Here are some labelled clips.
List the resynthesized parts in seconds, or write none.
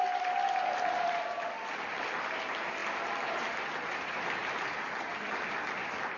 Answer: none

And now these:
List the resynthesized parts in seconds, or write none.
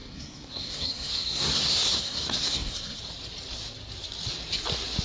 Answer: 0.0-3.0 (codec, SNAC)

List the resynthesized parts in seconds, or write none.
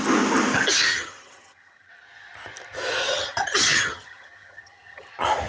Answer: 0.9-1.9 (vocoder, HiFi-GAN); 3.0-5.1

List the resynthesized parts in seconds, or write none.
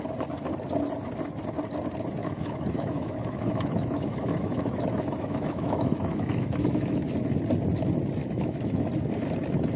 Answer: 2.2-7.0 (autoencoder, DAC-VAE); 8.2-8.9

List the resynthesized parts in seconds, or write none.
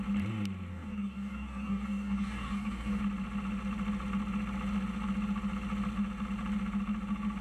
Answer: 0.7-3.0 (codec, DAC)